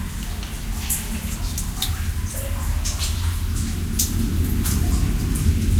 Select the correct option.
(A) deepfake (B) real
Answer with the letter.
B